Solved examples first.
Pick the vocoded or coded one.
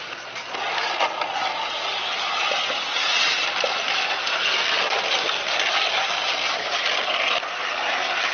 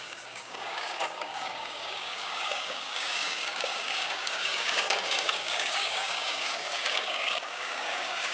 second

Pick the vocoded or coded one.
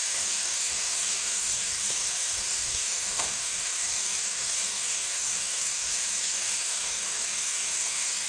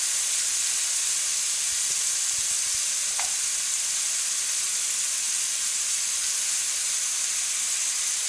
first